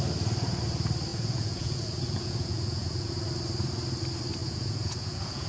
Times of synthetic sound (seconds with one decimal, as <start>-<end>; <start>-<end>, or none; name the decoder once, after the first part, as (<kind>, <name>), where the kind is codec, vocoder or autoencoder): 1.1-3.1 (vocoder, Vocos); 4.4-5.5

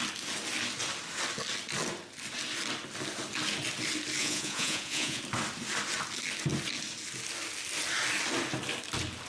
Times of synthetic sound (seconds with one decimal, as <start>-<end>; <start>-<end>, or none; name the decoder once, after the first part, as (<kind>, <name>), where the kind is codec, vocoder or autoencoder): 4.2-5.2 (vocoder, Vocos)

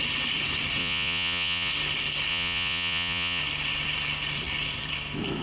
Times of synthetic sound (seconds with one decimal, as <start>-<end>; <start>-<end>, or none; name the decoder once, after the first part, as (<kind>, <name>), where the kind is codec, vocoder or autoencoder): 0.8-1.7 (vocoder, Vocos); 2.3-3.4

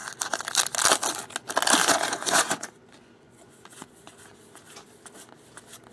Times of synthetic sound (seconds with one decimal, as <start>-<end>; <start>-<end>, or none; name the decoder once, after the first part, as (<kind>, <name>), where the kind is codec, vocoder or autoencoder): 1.8-4.2 (vocoder, Vocos)

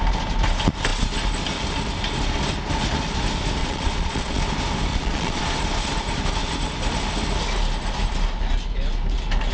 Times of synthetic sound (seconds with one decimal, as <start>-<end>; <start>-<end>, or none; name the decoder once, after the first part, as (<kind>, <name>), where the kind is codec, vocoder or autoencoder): 3.6-4.4 (vocoder, Vocos); 4.9-5.4